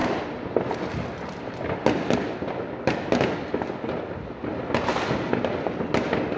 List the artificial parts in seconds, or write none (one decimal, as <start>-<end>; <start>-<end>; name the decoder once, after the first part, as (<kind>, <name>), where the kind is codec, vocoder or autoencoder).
none